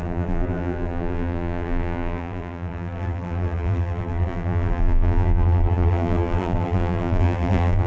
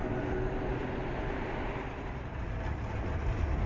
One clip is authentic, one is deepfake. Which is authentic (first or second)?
second